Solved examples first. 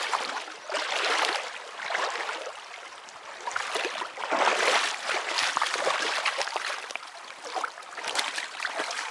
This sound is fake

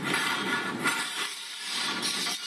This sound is fake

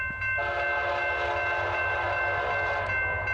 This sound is real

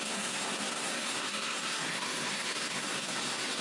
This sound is fake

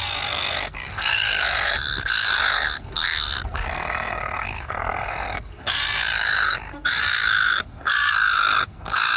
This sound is fake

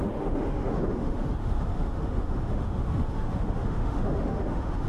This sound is fake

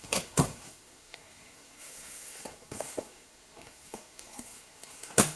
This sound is fake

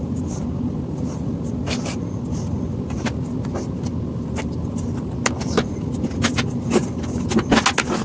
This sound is real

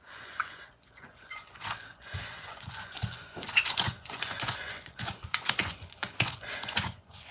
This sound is fake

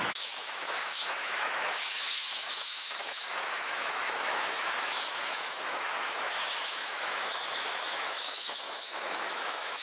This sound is fake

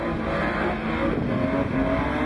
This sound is real